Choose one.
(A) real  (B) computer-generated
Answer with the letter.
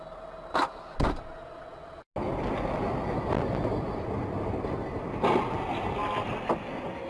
A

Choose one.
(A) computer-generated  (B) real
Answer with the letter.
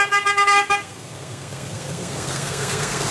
A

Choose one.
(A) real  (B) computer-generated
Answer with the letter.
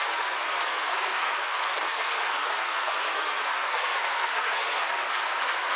B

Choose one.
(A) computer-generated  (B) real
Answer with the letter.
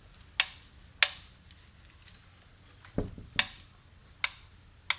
B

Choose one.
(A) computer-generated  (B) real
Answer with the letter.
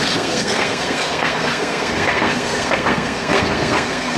A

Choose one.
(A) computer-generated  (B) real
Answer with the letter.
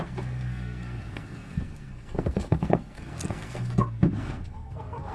A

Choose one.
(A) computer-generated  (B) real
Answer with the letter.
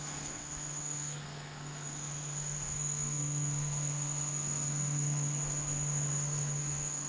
A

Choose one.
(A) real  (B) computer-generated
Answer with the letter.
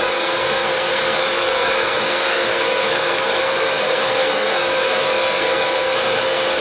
B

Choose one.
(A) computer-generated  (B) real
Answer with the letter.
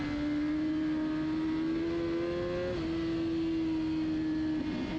B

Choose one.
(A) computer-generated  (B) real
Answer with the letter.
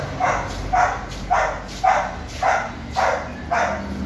B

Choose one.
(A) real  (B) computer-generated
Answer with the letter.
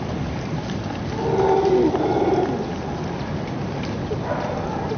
A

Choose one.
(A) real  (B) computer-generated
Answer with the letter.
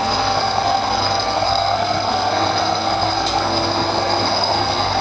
B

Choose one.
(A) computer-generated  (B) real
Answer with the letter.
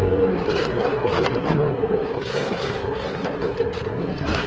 A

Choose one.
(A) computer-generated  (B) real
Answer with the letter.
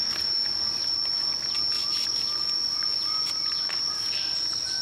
B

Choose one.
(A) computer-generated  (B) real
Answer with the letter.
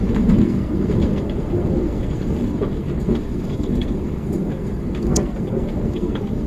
A